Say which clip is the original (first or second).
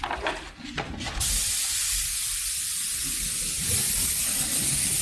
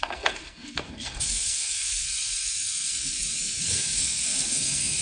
first